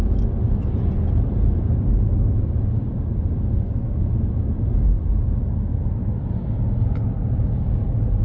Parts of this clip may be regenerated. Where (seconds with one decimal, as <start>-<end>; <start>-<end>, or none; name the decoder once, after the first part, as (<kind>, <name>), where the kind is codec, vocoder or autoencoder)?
none